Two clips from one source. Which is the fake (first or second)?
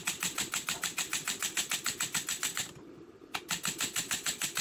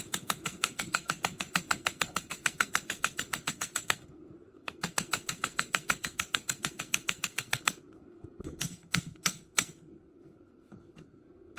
second